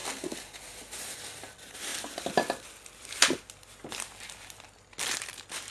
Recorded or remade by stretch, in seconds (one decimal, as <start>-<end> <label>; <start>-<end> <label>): 0.0-5.7 recorded